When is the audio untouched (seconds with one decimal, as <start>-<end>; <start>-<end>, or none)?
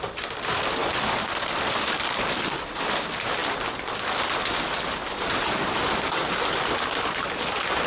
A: 0.0-7.9